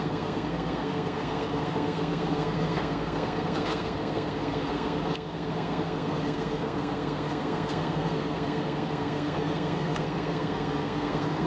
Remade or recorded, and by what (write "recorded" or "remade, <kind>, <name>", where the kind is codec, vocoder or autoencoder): remade, codec, SNAC